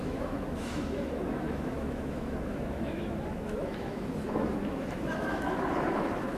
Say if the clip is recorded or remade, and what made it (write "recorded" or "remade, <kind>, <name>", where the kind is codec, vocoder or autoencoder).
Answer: remade, autoencoder, DAC-VAE